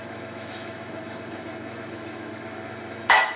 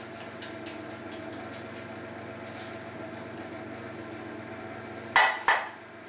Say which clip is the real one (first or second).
second